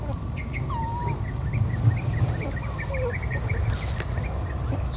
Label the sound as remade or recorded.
recorded